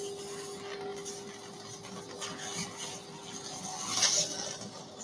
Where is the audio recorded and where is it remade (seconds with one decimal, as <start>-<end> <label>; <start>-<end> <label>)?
0.0-5.0 recorded